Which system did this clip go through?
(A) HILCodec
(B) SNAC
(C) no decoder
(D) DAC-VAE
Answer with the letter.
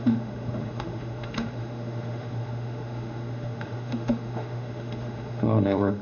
D